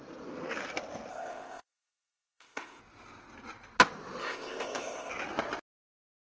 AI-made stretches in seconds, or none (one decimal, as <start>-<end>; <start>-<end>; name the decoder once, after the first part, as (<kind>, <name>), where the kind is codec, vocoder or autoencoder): 1.1-2.8 (codec, ZipCodec); 4.2-5.1